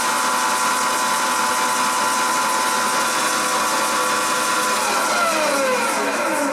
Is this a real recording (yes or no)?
yes